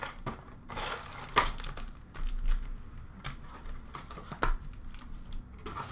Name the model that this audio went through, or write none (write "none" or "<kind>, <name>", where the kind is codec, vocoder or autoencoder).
none